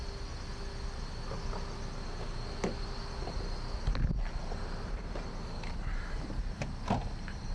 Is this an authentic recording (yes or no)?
yes